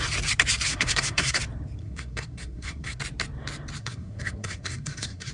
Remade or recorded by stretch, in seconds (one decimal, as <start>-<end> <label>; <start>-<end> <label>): 0.0-0.7 recorded; 0.7-1.4 remade; 1.4-1.8 recorded; 1.8-3.0 remade; 3.0-3.8 recorded; 3.8-5.3 remade